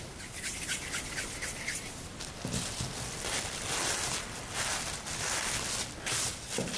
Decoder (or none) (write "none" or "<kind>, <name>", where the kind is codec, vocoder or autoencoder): none